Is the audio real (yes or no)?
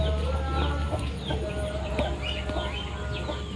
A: yes